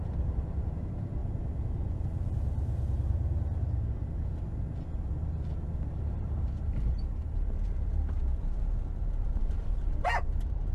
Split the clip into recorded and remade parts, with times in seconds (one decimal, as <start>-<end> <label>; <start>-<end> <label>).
0.0-1.2 remade; 1.2-5.9 recorded; 5.9-10.7 remade